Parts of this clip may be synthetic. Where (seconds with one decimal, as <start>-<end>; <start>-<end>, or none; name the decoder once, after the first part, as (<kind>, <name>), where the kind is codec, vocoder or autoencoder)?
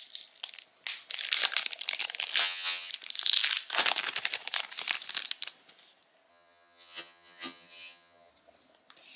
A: 2.4-2.9 (vocoder, HiFi-GAN); 6.3-8.3